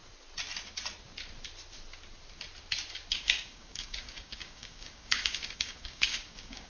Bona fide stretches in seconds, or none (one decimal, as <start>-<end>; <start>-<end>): 0.0-3.1